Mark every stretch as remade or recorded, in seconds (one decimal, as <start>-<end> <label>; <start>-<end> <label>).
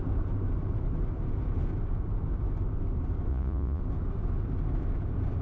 0.0-3.3 recorded; 3.3-3.8 remade; 3.8-5.4 recorded